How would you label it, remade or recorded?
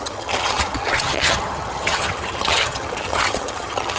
remade